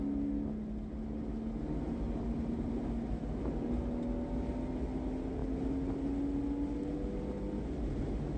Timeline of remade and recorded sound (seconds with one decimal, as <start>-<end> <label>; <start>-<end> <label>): 0.0-8.4 recorded